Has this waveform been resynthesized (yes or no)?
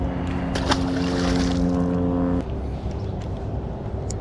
no